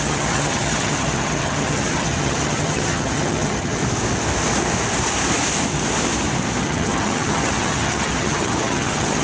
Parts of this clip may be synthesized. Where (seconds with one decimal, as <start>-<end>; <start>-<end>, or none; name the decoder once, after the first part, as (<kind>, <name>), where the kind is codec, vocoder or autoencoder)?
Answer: 0.0-3.8 (vocoder, HiFi-GAN); 6.6-9.2